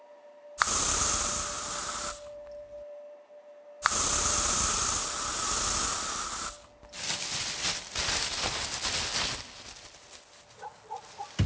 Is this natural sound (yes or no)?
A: yes